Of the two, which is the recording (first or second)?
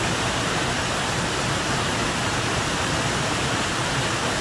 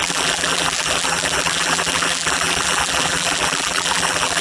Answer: first